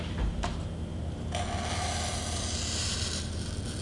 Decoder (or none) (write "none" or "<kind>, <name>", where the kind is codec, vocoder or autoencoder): none